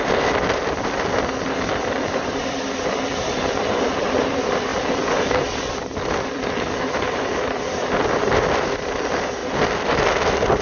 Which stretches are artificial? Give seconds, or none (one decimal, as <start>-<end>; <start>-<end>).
0.0-4.7; 5.7-9.4